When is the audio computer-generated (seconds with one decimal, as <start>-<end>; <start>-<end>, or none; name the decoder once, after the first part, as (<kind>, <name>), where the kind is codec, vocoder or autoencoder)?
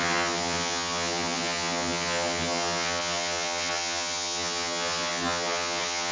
0.0-6.1 (vocoder, HiFi-GAN)